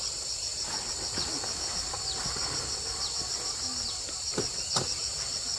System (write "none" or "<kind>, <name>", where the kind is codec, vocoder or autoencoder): none